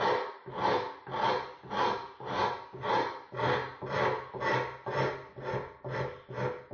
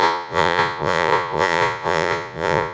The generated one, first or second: second